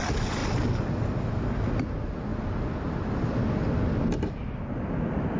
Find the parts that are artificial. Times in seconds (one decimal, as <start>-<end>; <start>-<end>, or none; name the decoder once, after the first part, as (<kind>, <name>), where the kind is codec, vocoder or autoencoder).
none